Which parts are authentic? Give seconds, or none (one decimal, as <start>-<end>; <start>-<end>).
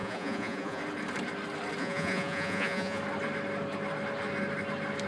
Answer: 0.8-1.8; 3.0-5.1